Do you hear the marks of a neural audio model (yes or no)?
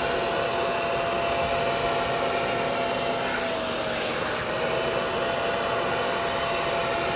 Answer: no